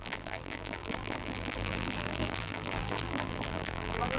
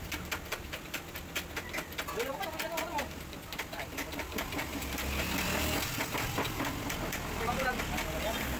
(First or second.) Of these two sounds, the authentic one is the second